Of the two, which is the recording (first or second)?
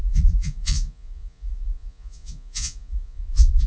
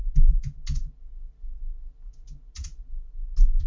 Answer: second